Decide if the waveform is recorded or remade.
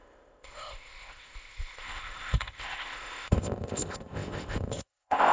remade